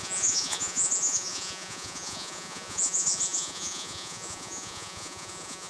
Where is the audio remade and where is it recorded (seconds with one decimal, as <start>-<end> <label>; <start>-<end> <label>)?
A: 0.0-5.7 remade